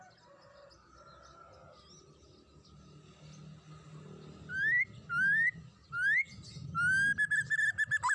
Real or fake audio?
real